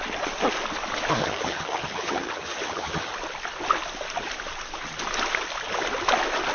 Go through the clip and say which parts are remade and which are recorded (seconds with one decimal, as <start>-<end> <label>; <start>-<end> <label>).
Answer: 0.0-1.2 recorded; 1.2-3.1 remade; 3.1-6.5 recorded